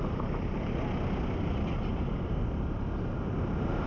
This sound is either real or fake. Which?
real